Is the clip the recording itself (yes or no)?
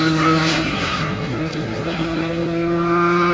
no